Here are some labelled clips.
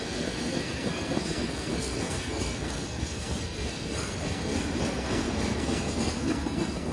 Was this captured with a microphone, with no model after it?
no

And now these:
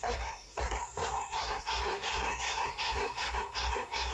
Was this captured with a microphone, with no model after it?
no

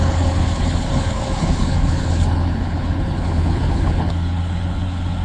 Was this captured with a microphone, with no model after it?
no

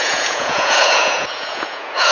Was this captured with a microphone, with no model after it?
no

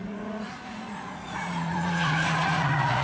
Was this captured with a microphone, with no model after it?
no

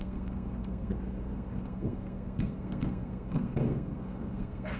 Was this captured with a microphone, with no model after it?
no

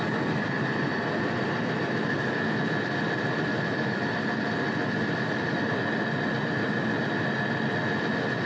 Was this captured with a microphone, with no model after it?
yes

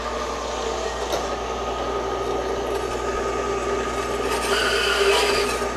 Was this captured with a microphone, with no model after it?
yes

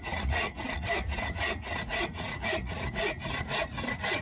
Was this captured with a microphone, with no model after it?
no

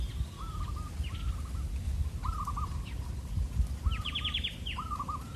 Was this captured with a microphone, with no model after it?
yes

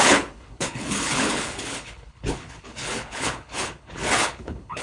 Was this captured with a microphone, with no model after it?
no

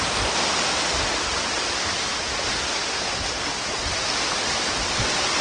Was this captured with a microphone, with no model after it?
yes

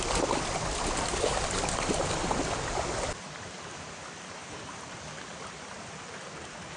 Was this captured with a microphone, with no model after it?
yes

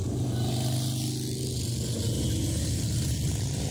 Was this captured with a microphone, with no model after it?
yes